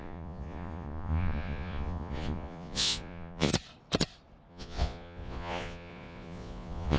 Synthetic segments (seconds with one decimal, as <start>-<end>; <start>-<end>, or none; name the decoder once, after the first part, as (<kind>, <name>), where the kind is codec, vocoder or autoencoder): 0.0-3.5 (vocoder, Vocos); 4.5-7.0